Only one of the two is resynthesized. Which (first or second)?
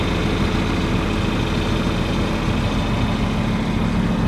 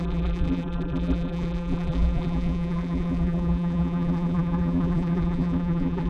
second